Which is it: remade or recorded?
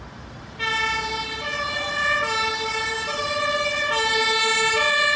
remade